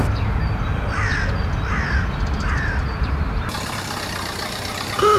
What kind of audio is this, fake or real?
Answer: real